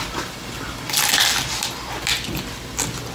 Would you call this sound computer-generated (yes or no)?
no